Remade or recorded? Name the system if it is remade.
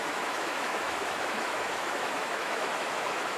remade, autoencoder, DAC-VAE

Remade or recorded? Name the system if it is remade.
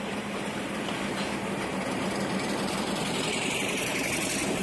remade, vocoder, BigVGAN v2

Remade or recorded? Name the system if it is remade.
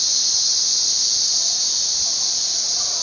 recorded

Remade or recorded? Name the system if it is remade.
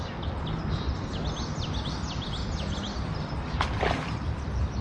recorded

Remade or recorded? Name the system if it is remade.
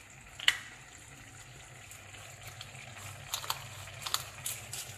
recorded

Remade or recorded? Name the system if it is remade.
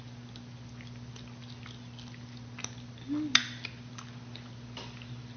recorded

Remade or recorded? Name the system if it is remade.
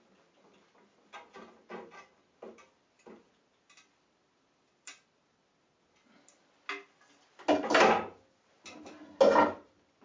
recorded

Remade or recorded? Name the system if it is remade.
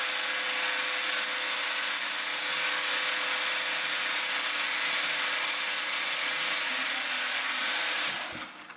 recorded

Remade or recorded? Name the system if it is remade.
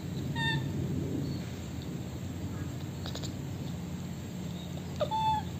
recorded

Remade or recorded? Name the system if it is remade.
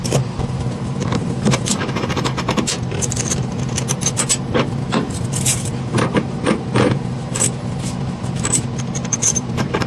remade, vocoder, BigVGAN v2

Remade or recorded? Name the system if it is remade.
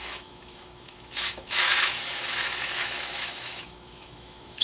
remade, autoencoder, DAC-VAE